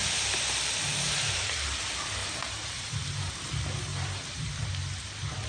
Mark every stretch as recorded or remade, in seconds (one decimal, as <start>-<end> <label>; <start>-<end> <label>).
0.0-2.2 recorded; 2.2-3.3 remade; 3.3-3.9 recorded; 3.9-4.5 remade; 4.5-5.5 recorded